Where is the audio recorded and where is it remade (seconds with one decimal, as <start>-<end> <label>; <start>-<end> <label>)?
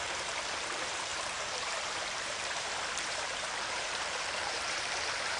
0.0-5.4 remade